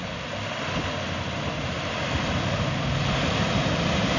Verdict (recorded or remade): recorded